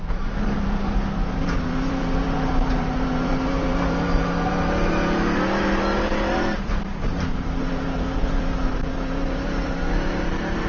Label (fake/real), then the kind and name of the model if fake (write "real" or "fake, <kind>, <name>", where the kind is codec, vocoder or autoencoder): fake, vocoder, BigVGAN v2